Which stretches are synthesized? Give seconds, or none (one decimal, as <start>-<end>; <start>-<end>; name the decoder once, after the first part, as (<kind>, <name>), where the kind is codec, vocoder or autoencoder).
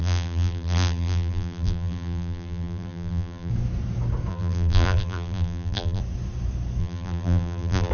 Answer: 0.0-3.5 (vocoder, BigVGAN v2); 4.3-6.0; 6.8-7.9